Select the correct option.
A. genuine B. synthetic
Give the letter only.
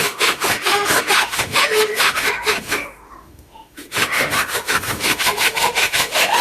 B